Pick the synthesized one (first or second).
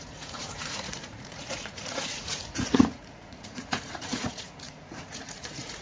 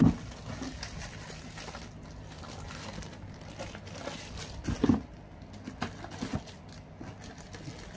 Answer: first